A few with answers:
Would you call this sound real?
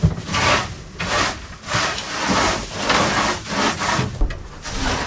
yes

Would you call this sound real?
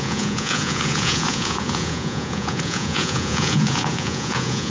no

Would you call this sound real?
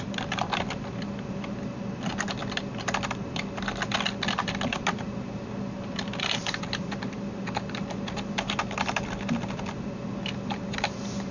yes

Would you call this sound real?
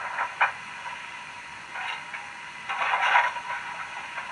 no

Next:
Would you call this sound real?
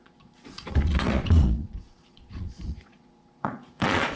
no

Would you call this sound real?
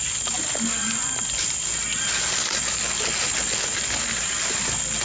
yes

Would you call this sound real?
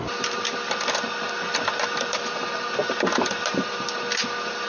yes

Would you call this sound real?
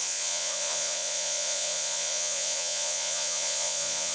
no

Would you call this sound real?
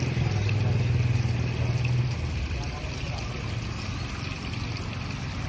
yes